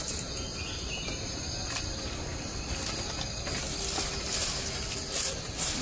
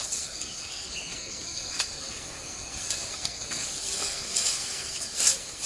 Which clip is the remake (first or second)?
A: second